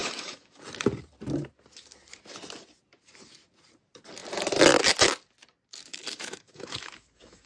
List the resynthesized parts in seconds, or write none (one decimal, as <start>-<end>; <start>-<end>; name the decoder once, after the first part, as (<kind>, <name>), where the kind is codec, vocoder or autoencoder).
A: 0.0-0.6 (autoencoder, DAC-VAE); 5.9-7.5